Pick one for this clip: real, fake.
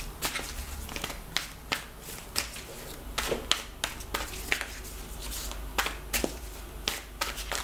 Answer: real